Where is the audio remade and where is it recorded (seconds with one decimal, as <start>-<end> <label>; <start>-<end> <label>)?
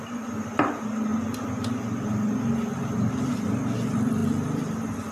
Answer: 0.0-1.1 remade; 1.1-3.3 recorded; 3.3-5.1 remade